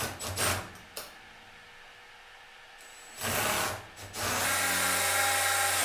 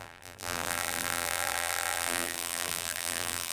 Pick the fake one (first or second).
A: second